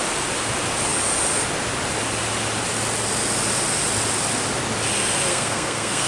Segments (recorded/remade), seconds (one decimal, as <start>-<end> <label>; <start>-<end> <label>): 0.0-5.3 recorded; 5.3-6.1 remade